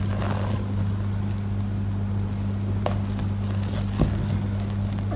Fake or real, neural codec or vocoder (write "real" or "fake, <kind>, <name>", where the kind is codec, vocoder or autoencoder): real